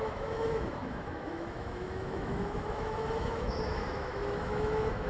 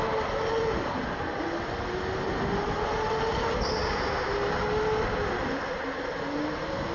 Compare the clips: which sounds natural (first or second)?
second